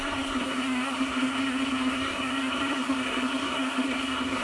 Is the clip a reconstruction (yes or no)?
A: yes